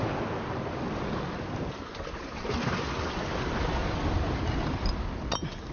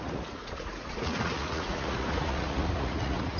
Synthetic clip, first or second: second